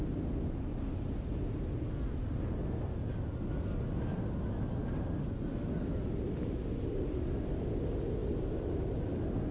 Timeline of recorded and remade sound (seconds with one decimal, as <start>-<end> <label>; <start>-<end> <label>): 0.0-9.5 recorded